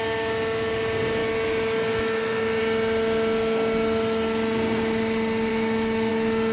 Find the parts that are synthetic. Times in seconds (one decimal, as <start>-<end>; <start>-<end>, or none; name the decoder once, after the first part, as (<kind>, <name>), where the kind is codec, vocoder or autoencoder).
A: 1.2-2.6 (autoencoder, DAC-VAE); 5.5-6.1